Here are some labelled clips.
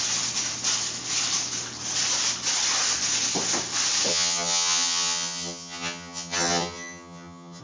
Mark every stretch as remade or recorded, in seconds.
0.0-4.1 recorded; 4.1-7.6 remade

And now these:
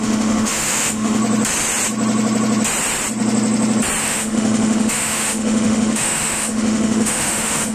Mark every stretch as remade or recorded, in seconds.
0.0-1.2 remade; 1.2-4.0 recorded; 4.0-7.7 remade